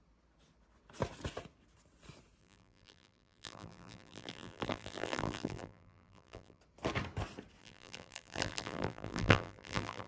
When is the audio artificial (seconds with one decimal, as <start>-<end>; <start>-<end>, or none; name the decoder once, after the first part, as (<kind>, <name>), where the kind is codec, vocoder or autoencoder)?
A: 2.4-6.6 (vocoder, BigVGAN v2); 7.6-10.1